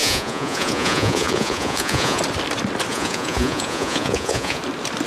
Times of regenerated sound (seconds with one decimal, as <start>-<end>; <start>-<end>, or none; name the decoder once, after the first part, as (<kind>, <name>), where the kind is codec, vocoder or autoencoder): 0.0-2.2 (vocoder, Vocos); 2.9-4.6